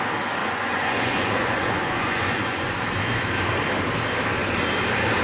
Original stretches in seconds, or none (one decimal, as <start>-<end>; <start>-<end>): 0.0-0.4; 2.8-5.2